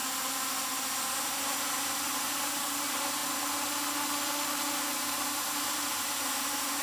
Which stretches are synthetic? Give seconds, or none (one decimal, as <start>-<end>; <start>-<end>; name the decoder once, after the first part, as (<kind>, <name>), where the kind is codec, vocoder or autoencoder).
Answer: 1.2-3.2 (vocoder, BigVGAN v2); 5.1-6.8